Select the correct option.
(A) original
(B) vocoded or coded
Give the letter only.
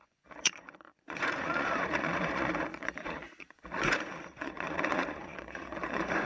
B